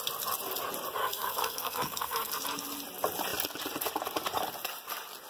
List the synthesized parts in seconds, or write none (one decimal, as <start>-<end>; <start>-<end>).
1.0-2.3